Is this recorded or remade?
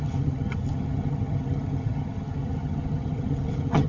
remade